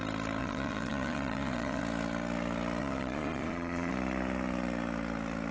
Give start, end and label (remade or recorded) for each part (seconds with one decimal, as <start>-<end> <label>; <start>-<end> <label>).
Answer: 0.0-0.4 recorded; 0.4-1.8 remade; 1.8-2.8 recorded; 2.8-3.9 remade; 3.9-5.5 recorded